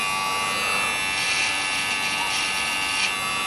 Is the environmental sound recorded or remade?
recorded